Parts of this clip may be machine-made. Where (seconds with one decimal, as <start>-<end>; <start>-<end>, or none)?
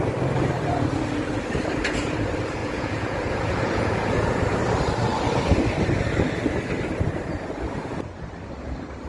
2.6-4.3